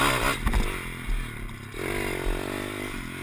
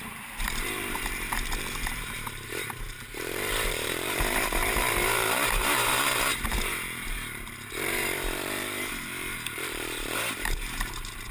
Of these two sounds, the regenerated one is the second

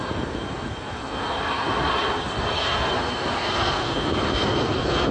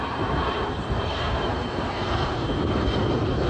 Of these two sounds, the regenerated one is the second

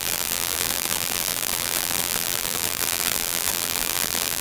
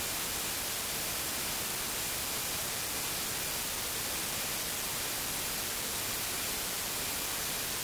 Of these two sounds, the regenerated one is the first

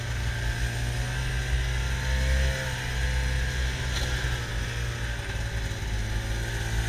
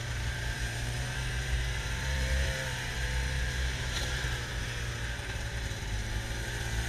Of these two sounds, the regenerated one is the second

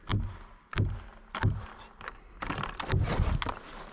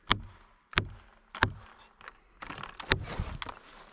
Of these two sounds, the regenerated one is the first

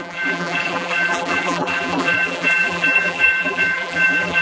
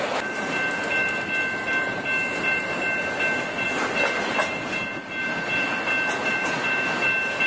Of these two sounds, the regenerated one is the first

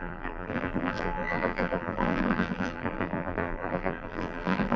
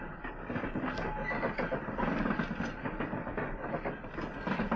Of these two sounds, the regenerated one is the first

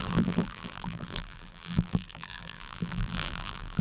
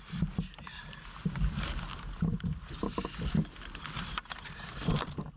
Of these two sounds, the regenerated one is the first